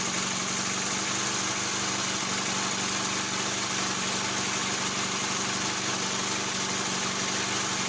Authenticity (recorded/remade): recorded